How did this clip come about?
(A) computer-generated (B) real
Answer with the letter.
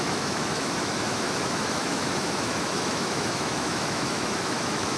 A